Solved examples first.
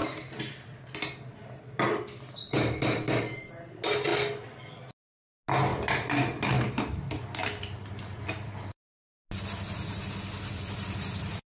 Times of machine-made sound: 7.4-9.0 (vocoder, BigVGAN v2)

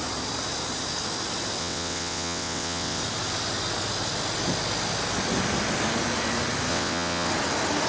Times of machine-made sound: 1.6-3.0 (vocoder, WaveNeXt); 6.7-7.3

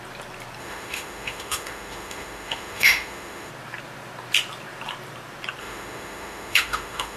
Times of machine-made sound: 0.6-3.5 (autoencoder, DAC-VAE); 5.6-7.2

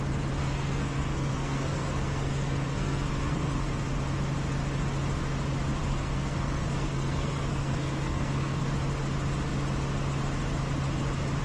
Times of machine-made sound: 0.4-4.0 (codec, SNAC); 5.8-8.6

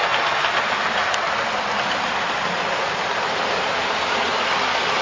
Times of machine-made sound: none

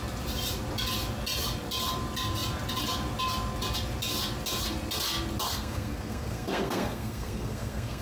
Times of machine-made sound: 5.5-8.0 (codec, SNAC)